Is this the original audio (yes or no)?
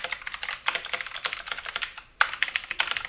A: yes